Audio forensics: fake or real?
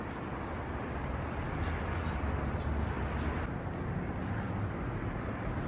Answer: real